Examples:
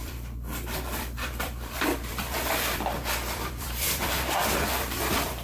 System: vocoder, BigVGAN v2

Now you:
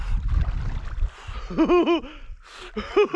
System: none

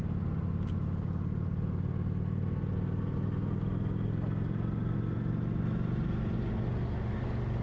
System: none